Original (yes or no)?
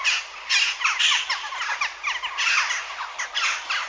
yes